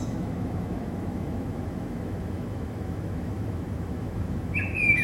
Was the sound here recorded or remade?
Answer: remade